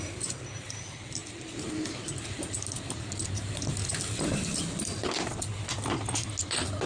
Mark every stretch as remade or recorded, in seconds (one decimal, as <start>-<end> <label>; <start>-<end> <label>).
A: 0.0-6.9 recorded